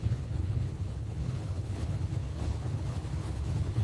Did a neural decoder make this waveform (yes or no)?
yes